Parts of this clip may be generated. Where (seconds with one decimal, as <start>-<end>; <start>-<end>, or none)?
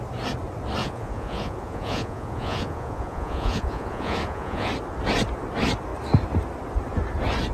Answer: 0.8-4.7